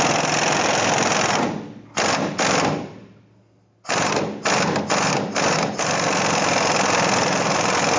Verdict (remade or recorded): recorded